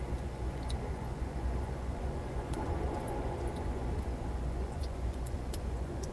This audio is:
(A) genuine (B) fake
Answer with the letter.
B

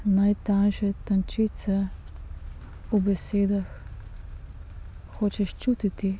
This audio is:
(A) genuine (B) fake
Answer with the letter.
A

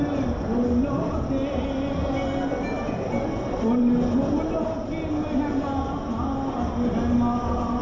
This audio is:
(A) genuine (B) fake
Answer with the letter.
A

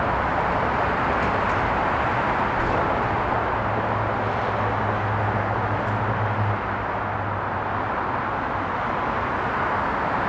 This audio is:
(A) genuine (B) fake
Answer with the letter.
A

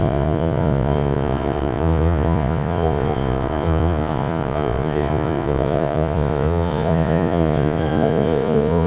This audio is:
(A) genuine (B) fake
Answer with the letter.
B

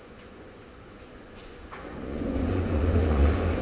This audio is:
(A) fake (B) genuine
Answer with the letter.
A